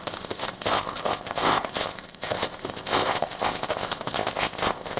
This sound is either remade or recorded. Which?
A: remade